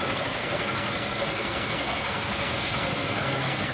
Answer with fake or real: fake